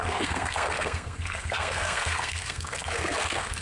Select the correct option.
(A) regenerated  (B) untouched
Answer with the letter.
A